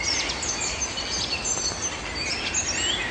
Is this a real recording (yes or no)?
yes